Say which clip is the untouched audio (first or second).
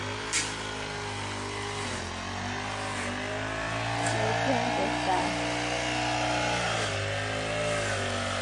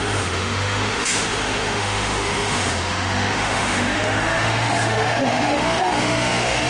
first